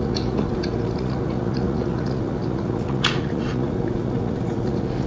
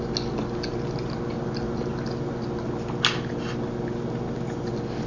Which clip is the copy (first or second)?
first